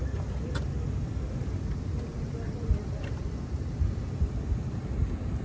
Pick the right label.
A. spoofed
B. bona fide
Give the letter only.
B